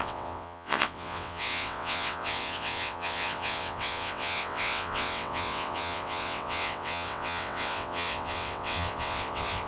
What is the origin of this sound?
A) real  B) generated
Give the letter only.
B